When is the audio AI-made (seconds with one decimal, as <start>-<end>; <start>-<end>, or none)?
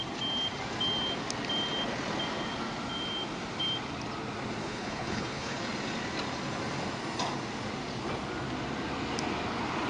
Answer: 4.6-5.6